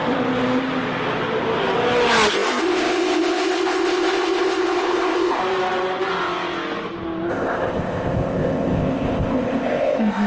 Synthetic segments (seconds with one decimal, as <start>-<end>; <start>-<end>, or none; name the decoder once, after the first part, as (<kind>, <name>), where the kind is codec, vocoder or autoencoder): 2.3-5.4 (codec, ZipCodec); 7.3-10.3